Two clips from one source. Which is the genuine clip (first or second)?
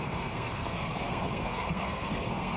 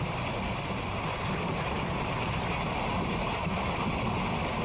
second